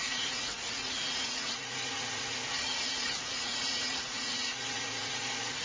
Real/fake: fake